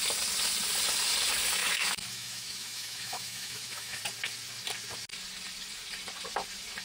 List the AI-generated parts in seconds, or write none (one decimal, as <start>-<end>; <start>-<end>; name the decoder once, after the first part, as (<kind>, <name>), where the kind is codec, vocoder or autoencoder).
1.6-4.0 (autoencoder, DAC-VAE)